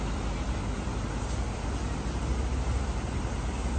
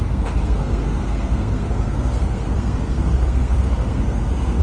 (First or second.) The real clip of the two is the first